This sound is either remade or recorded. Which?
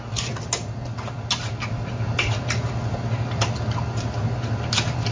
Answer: recorded